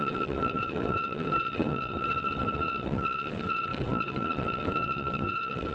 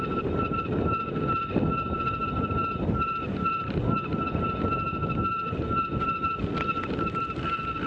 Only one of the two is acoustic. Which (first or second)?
second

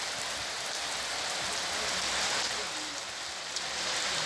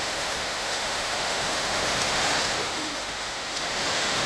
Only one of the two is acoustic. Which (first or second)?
first